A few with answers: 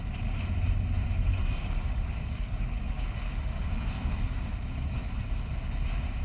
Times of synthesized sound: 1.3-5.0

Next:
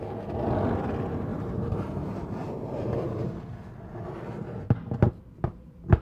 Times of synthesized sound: 1.3-3.3

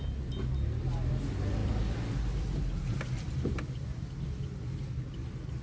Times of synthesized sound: 2.9-3.5

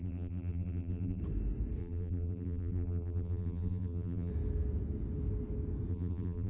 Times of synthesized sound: 0.0-1.2; 1.8-4.3; 5.9-6.5

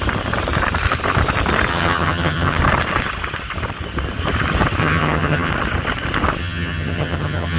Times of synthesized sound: 1.7-2.6; 4.8-5.5; 6.4-7.6